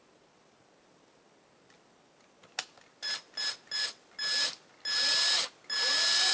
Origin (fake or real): real